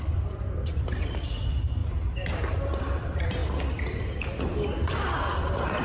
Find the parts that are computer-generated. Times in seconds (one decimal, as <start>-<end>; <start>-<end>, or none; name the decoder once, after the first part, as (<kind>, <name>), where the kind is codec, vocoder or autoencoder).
0.0-1.8 (vocoder, BigVGAN v2); 2.6-5.8